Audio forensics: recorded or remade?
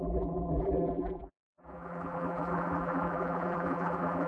remade